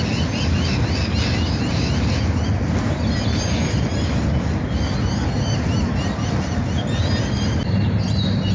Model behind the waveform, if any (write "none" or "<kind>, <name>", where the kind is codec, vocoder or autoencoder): none